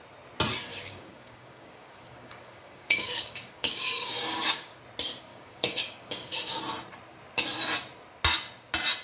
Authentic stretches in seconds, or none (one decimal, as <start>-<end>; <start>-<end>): 0.0-0.7; 4.8-5.3; 6.6-9.0